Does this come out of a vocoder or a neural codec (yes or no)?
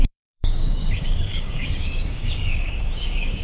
yes